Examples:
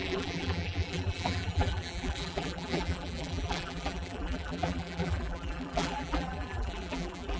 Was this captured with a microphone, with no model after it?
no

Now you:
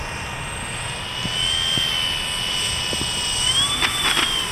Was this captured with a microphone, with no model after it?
yes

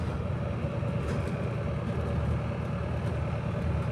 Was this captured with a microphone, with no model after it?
yes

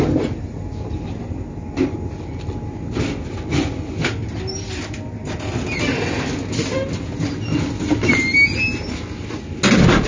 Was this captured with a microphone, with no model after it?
yes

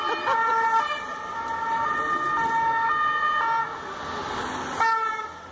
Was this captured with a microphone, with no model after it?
yes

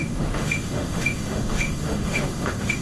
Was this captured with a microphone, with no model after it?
no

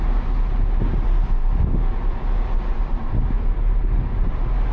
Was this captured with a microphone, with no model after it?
yes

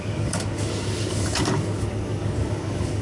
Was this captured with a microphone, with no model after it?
no